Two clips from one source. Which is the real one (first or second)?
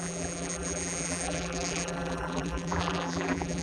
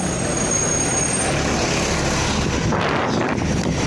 second